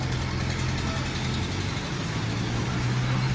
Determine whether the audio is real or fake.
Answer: real